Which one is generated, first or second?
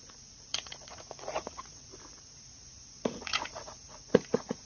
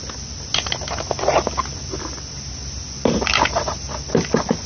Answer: first